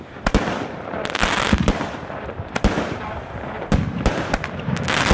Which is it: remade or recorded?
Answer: remade